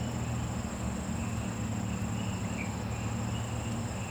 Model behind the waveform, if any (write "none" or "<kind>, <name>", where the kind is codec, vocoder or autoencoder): none